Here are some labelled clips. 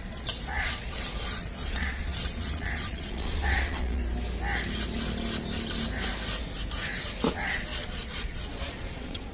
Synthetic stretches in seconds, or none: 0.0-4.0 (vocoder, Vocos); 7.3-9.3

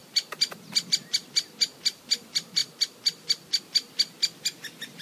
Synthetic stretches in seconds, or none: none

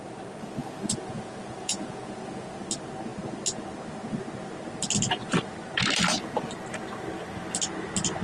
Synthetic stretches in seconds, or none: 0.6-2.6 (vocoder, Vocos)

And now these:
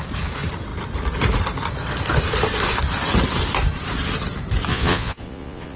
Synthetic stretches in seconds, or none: 4.7-5.8 (vocoder, Vocos)

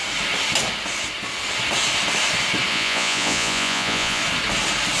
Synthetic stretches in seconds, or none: 2.7-4.2 (vocoder, Vocos)

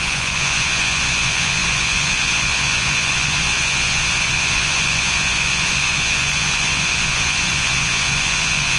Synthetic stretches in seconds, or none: 0.0-8.8 (vocoder, Vocos)

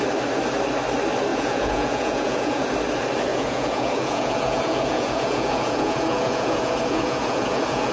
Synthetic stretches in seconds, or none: 1.3-2.7 (vocoder, Vocos); 3.3-7.9

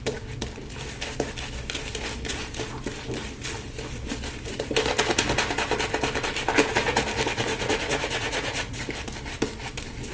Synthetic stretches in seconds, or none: 7.5-8.8 (vocoder, Vocos)